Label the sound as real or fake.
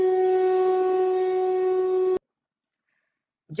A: real